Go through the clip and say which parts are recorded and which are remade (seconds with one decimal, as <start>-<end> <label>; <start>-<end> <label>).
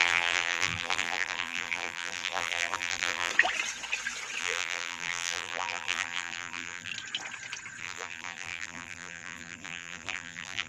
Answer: 0.0-3.3 remade; 3.3-4.4 recorded; 4.4-6.9 remade; 6.9-7.8 recorded; 7.8-10.7 remade